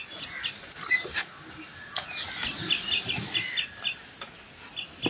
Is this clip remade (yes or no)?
no